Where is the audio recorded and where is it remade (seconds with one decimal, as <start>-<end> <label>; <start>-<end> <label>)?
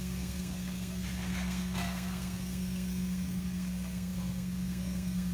0.0-5.3 remade